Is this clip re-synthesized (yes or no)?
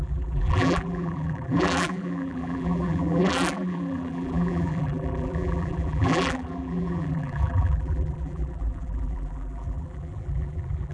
yes